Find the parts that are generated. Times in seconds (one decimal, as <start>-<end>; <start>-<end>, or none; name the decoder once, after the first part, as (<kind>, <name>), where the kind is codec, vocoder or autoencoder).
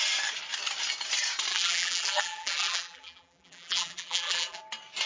1.5-4.6 (vocoder, BigVGAN v2)